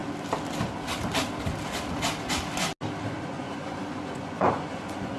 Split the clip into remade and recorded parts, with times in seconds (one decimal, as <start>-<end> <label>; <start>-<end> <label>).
0.0-3.1 recorded; 3.1-5.2 remade